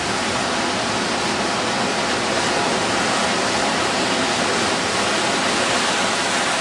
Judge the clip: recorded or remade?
recorded